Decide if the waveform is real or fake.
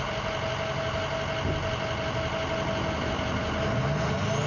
real